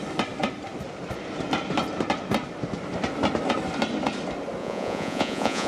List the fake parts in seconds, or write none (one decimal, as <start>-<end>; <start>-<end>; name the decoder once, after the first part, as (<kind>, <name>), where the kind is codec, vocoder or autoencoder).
4.6-5.7 (vocoder, Vocos)